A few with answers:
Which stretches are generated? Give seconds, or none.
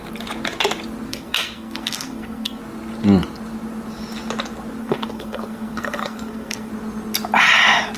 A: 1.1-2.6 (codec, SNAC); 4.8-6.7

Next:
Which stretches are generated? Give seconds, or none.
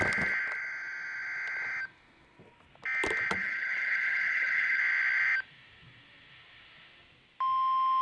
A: 3.4-4.8 (codec, HILCodec)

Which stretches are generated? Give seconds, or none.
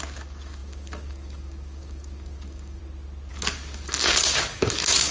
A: 0.0-2.8 (codec, DAC); 3.3-5.1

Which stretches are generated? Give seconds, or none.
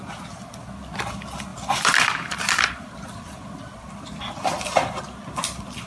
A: 1.5-5.0 (vocoder, BigVGAN v2)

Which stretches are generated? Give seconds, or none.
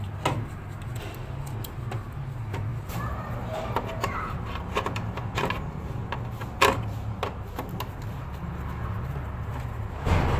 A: 2.7-5.2 (vocoder, BigVGAN v2)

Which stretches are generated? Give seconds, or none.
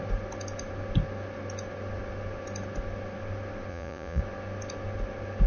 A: 3.7-4.2 (vocoder, Vocos)